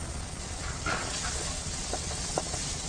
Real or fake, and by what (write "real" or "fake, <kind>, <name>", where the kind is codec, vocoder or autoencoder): fake, vocoder, Vocos